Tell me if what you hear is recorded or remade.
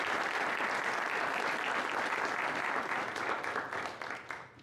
recorded